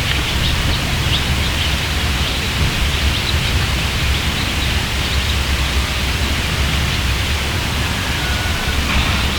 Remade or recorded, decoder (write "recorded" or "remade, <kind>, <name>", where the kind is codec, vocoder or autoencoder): recorded